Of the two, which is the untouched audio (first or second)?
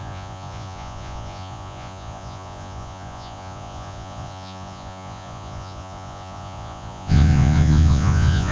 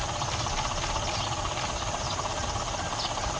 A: second